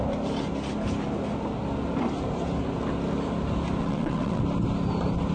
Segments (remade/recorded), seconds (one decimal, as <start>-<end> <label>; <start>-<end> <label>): 0.0-3.8 recorded; 3.8-4.4 remade; 4.4-5.3 recorded